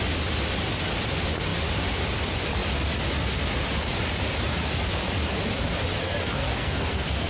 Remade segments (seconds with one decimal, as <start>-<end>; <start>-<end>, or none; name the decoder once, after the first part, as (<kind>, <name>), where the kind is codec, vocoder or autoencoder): 6.0-7.3 (codec, SNAC)